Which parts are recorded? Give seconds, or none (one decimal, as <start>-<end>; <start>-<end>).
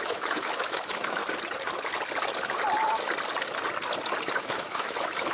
1.2-4.4